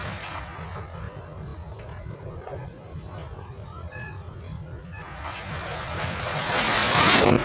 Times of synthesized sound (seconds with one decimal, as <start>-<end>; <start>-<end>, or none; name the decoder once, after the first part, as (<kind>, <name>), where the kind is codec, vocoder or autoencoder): 0.0-7.4 (vocoder, Vocos)